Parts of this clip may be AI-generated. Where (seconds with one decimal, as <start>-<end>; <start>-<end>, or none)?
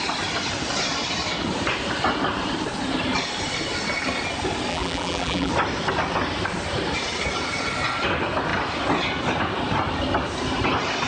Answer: 4.7-5.5